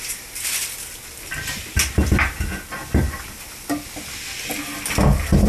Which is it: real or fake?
real